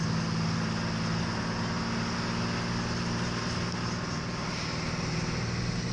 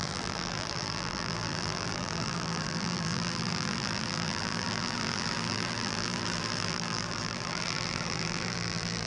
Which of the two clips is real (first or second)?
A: first